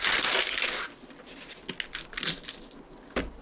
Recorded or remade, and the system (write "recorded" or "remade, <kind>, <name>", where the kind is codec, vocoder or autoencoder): recorded